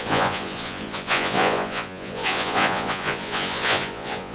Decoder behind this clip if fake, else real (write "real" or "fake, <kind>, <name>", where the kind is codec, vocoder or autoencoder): fake, vocoder, Vocos